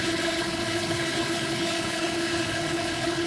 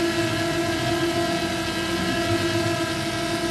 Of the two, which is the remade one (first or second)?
first